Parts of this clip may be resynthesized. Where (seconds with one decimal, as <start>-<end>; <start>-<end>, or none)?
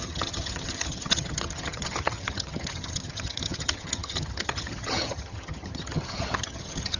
0.0-7.0